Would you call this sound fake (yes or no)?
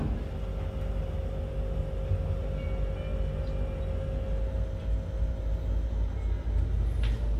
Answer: no